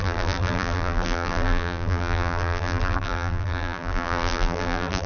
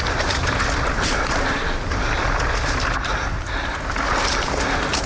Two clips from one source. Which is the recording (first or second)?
second